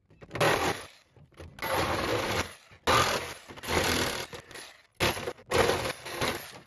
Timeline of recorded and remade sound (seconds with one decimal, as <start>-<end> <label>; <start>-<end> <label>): 0.0-6.7 recorded